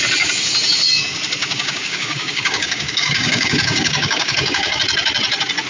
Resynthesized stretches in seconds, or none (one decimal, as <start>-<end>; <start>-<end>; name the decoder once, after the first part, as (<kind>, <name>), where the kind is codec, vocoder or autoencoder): 1.4-4.8 (codec, DAC)